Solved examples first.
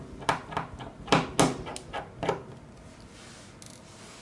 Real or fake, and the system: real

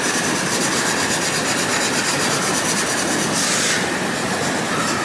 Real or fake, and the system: real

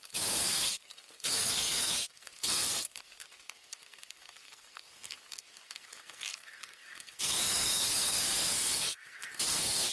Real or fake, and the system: fake, codec, SNAC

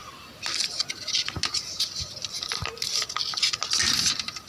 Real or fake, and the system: real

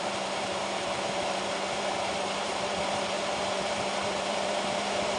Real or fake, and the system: fake, vocoder, BigVGAN v2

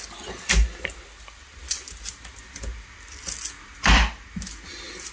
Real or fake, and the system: real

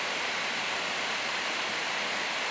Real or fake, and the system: real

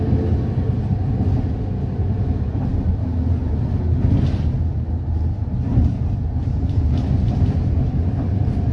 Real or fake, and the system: real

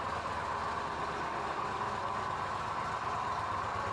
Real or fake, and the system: real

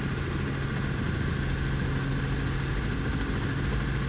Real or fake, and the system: real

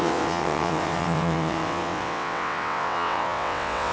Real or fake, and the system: fake, vocoder, WaveNeXt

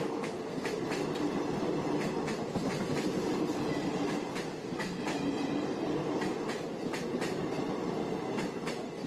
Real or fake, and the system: real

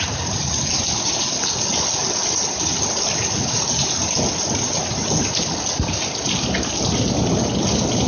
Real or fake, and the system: real